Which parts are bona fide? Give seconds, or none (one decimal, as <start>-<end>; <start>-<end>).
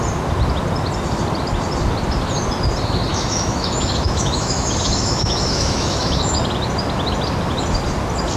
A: 0.0-3.1; 6.4-8.4